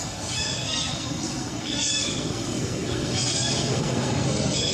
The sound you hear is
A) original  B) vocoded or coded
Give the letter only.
B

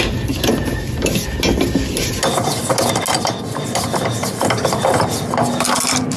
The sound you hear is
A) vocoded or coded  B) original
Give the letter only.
B